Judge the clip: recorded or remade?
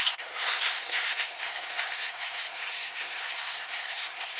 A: remade